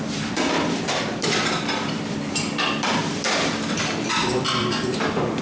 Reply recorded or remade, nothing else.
remade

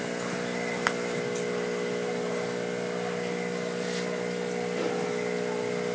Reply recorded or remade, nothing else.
recorded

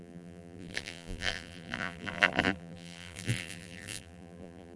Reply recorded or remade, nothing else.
remade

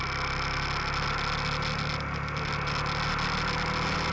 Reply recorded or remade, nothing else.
recorded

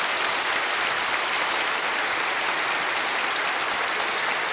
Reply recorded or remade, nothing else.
recorded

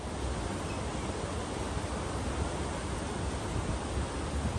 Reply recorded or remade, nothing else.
recorded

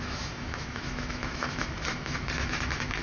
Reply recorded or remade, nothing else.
remade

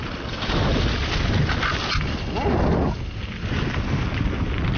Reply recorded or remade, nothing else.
recorded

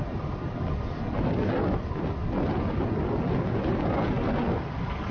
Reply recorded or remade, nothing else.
recorded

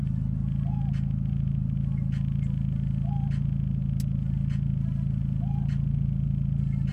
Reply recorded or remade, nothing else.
recorded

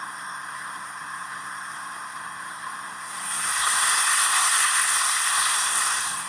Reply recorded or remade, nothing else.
remade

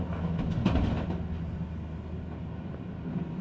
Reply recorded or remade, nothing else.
recorded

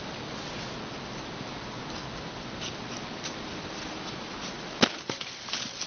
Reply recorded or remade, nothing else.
recorded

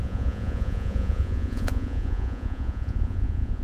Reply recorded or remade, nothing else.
remade